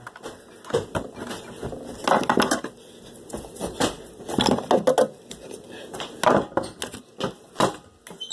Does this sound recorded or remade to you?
recorded